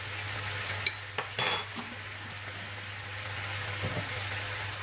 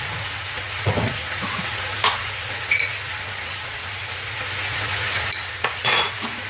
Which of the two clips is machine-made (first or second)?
second